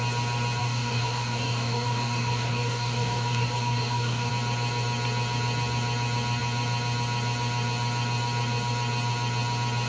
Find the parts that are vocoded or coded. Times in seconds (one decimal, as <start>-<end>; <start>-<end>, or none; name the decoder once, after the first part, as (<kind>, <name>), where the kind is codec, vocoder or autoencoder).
0.6-4.3 (codec, DAC)